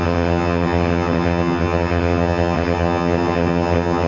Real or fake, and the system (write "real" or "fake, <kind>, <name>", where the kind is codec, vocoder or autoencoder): fake, vocoder, HiFi-GAN